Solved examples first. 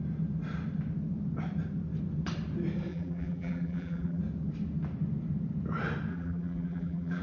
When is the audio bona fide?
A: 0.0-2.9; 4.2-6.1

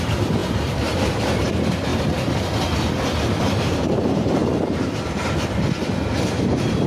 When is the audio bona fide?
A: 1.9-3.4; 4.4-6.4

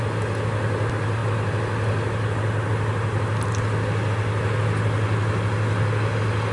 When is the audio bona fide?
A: 0.0-6.5